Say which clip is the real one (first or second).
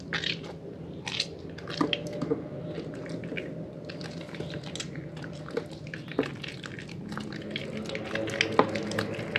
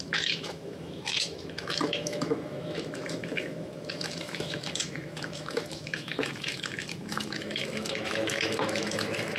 first